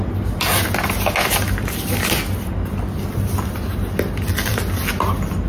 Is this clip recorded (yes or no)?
yes